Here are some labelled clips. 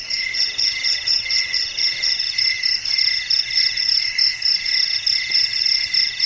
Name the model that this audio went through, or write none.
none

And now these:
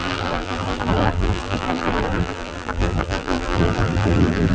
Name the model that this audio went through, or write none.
vocoder, BigVGAN v2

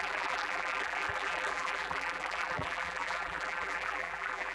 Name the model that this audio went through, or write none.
vocoder, BigVGAN v2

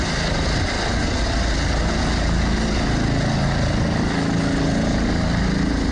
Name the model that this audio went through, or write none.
none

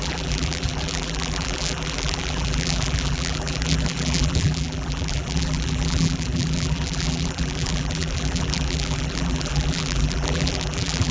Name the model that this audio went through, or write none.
vocoder, BigVGAN v2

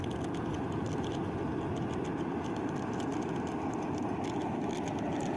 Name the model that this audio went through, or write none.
none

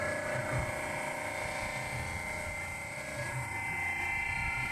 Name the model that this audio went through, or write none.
none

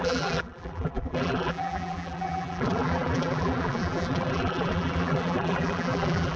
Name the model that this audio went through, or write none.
vocoder, BigVGAN v2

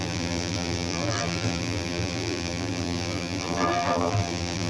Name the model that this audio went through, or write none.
vocoder, BigVGAN v2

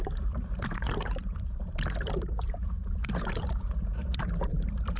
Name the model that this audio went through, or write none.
vocoder, BigVGAN v2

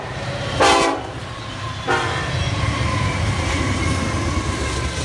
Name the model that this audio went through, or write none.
vocoder, BigVGAN v2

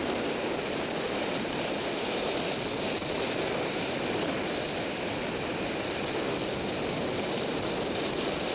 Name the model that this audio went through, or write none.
vocoder, BigVGAN v2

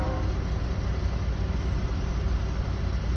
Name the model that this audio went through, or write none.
none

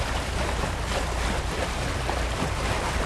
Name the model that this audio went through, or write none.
none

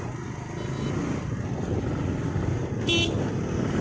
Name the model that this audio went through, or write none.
none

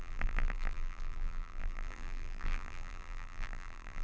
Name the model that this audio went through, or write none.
vocoder, BigVGAN v2